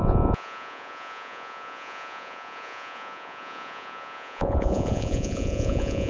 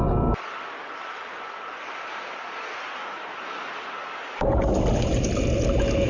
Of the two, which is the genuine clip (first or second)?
second